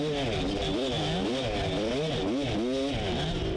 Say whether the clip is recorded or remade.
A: recorded